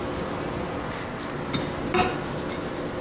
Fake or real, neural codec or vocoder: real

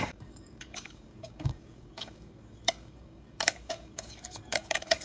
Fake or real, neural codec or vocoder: fake, codec, DAC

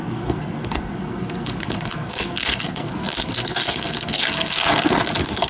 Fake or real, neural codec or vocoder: fake, codec, SNAC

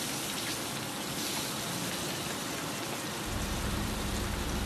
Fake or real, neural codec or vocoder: real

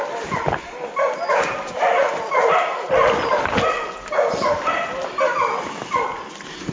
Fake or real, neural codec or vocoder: real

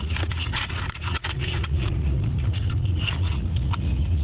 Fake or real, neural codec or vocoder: fake, vocoder, Vocos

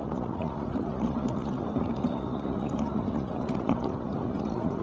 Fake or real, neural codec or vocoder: fake, vocoder, Vocos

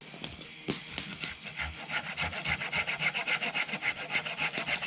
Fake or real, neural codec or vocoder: real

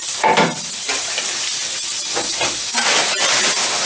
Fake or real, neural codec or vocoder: real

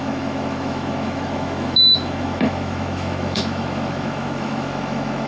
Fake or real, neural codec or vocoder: fake, autoencoder, DAC-VAE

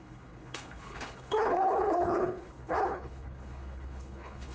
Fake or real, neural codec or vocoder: fake, codec, HILCodec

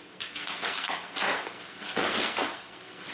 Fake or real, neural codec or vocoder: fake, codec, SNAC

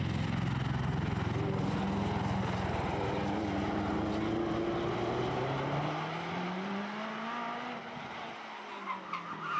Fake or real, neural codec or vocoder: real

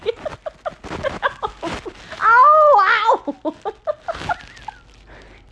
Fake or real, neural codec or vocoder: real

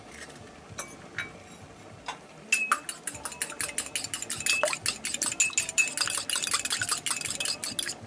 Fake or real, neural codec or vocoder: real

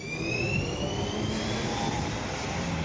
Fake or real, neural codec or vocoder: real